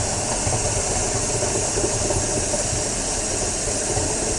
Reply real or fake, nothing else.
real